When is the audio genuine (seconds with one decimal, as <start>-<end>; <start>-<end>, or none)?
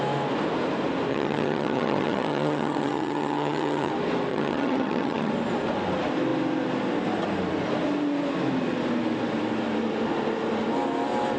0.0-1.1; 3.9-4.3; 5.3-11.4